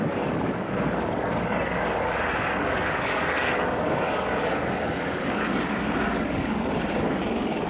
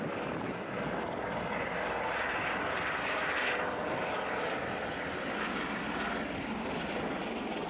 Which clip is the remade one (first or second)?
first